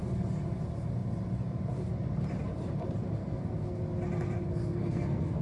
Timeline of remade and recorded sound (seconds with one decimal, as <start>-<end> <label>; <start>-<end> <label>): 0.0-3.2 recorded; 3.2-3.8 remade; 3.8-4.6 recorded; 4.6-5.4 remade